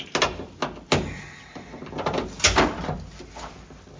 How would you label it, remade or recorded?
recorded